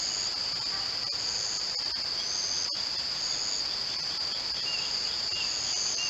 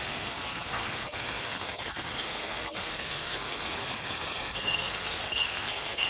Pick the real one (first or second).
first